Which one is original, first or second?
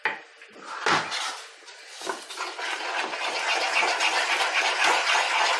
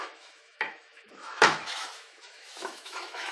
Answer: first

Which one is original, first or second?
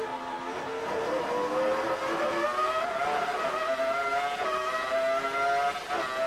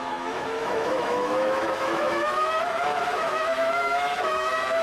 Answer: first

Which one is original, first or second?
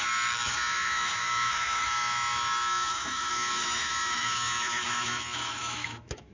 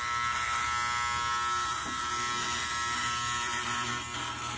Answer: second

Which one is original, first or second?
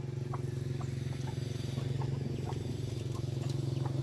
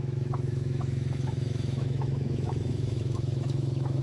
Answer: first